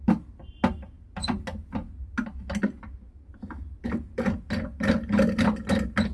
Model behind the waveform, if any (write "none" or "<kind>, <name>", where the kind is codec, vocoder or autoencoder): none